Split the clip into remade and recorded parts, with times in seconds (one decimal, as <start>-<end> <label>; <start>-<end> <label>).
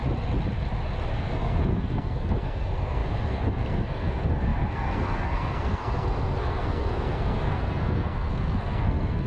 0.0-1.1 recorded; 1.1-9.3 remade